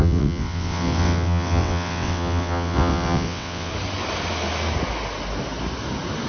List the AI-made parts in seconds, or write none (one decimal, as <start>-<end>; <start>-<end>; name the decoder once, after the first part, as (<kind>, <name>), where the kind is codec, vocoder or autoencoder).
0.0-3.7 (vocoder, WaveNeXt)